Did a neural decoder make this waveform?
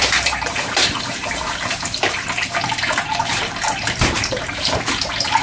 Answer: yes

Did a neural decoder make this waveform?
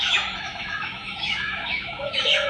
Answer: yes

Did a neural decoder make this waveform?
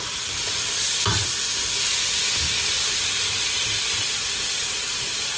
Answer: no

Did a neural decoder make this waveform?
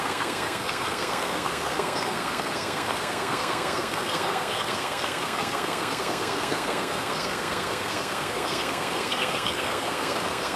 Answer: yes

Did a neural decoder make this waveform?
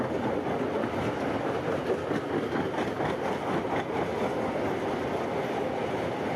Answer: no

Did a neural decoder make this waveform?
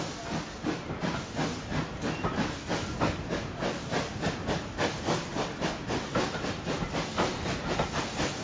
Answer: no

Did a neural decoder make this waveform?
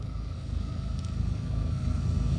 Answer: yes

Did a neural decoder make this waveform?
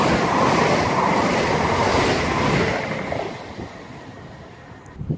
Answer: no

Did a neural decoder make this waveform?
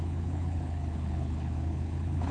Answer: yes